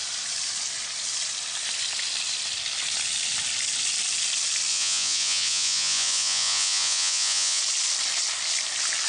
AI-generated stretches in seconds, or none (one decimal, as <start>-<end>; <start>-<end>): 4.7-7.6

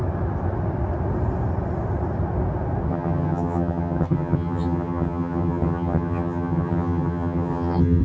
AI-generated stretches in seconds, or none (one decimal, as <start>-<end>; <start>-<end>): 2.9-8.0

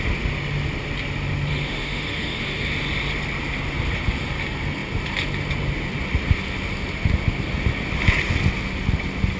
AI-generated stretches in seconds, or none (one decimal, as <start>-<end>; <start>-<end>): 1.5-2.4